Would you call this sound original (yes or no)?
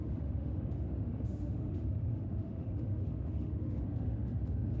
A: no